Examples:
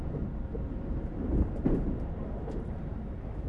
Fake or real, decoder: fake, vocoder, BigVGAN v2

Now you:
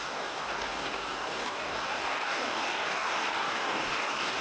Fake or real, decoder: fake, codec, DAC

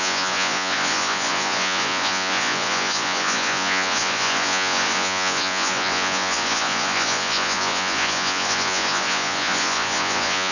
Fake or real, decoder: fake, vocoder, Vocos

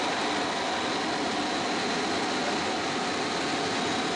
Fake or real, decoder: real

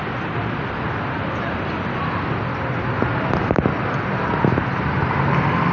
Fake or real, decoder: real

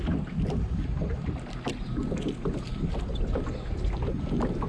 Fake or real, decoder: real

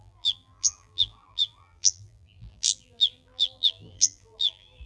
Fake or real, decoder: fake, vocoder, BigVGAN v2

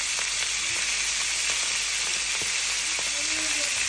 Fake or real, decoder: real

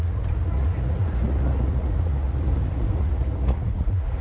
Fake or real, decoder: fake, vocoder, Vocos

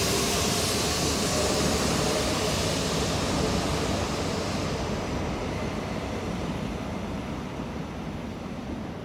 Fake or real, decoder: real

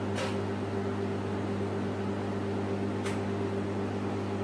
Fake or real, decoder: real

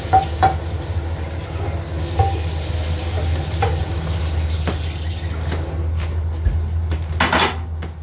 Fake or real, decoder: real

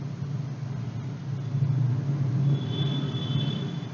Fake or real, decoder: real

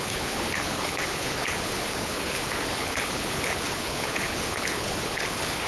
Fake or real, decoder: fake, codec, HILCodec